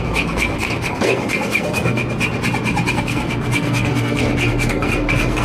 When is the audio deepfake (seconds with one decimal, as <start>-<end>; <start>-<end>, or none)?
0.0-2.0; 2.9-5.4